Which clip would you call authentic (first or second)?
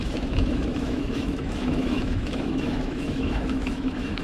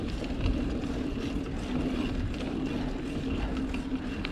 second